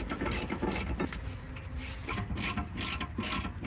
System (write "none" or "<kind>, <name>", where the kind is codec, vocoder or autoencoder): none